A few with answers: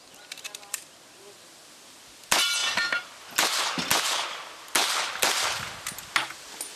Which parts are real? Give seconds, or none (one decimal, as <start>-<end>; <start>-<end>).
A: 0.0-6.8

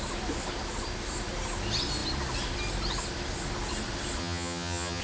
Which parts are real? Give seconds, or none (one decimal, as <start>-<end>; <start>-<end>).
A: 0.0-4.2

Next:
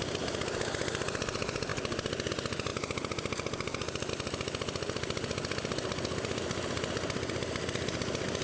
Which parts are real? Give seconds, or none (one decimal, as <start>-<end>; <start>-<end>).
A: 0.0-8.4

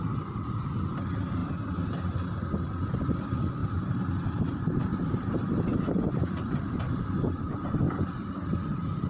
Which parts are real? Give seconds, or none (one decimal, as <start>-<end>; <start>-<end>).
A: 0.0-3.6; 7.7-9.1

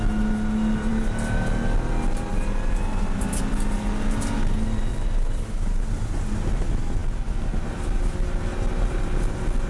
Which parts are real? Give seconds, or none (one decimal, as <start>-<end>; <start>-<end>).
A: 0.0-2.3; 3.4-4.9; 5.9-9.7

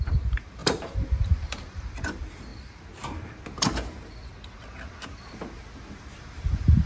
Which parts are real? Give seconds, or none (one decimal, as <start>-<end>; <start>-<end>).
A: 2.5-5.9

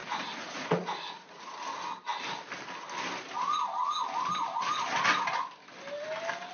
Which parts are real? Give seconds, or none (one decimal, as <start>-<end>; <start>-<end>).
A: 1.5-6.5